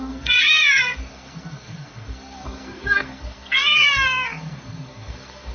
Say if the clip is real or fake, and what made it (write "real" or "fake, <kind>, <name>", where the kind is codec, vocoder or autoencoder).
fake, codec, SNAC